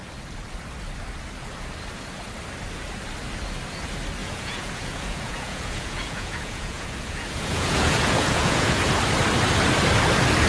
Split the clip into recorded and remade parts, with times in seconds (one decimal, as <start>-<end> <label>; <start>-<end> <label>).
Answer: 0.0-4.2 recorded; 4.2-8.9 remade; 8.9-10.5 recorded